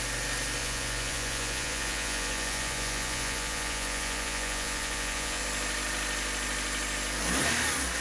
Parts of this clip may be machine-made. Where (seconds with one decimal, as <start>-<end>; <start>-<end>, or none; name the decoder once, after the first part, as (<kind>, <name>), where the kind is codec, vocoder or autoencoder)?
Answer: 0.6-5.4 (vocoder, Vocos)

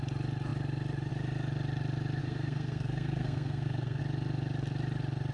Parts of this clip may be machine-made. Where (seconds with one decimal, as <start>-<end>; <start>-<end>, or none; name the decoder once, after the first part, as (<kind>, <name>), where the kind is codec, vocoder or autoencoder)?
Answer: 2.2-4.0 (codec, SNAC)

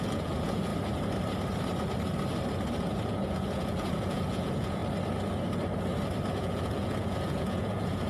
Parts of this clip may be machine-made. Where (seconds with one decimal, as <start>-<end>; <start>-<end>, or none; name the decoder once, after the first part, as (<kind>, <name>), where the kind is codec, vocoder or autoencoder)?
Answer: 0.0-0.7 (vocoder, Vocos); 2.8-4.8; 6.3-8.1

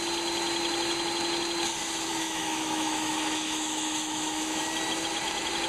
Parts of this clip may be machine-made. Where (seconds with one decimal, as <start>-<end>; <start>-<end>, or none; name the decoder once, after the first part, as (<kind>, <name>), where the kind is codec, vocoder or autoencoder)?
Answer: 2.1-4.6 (autoencoder, DAC-VAE)

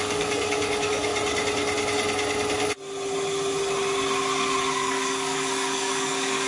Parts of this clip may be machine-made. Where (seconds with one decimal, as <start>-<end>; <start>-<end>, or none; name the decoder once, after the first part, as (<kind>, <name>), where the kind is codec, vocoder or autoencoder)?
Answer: 0.0-1.1 (codec, DAC); 4.7-6.5

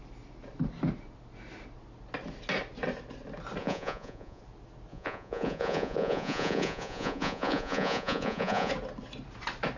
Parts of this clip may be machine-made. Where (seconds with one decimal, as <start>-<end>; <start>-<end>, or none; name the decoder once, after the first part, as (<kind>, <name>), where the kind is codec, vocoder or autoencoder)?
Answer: 3.6-4.4 (vocoder, Vocos); 4.9-8.7

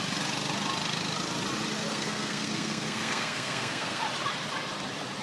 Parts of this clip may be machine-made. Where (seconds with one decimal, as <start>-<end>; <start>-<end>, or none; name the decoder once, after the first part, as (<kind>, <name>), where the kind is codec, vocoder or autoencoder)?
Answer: 1.9-4.0 (codec, SNAC)